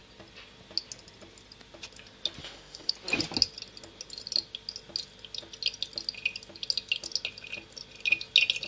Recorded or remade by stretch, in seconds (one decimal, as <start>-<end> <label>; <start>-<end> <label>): 0.0-2.4 recorded; 2.4-2.9 remade; 2.9-8.7 recorded